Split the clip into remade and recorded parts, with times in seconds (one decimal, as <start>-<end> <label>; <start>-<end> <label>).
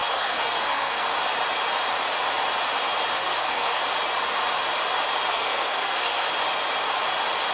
0.0-1.1 remade; 1.1-3.2 recorded; 3.2-3.8 remade; 3.8-5.3 recorded; 5.3-6.3 remade; 6.3-7.5 recorded